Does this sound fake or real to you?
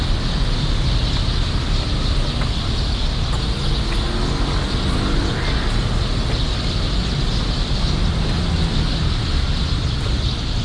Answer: real